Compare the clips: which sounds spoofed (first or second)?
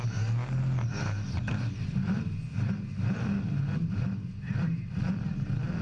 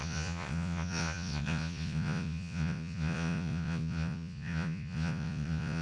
second